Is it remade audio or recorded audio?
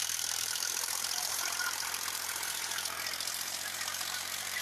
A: remade